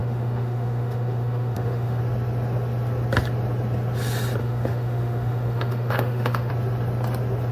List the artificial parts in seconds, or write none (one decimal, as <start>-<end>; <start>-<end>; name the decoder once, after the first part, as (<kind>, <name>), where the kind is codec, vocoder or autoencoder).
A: 0.0-2.0 (autoencoder, DAC-VAE); 4.4-6.5